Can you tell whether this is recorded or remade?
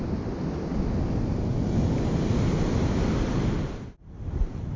recorded